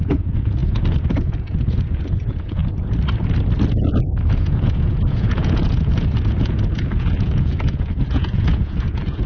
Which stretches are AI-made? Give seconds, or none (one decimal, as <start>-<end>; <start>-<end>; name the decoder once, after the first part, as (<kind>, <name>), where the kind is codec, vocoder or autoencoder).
0.0-2.6 (vocoder, Vocos); 4.3-9.3

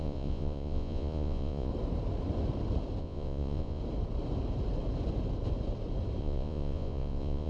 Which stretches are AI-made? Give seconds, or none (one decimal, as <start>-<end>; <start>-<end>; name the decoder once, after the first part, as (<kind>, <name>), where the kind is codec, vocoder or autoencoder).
0.0-1.7 (vocoder, Vocos); 3.0-3.8; 6.2-7.5

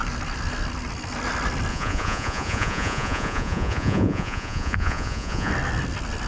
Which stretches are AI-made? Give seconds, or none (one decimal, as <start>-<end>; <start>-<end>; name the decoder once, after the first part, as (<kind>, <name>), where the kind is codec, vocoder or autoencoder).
1.7-5.5 (vocoder, Vocos)